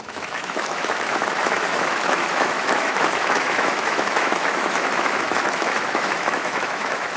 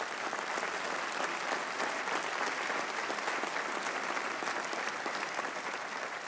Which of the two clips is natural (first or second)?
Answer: second